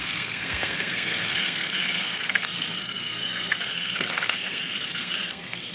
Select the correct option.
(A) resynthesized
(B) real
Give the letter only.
A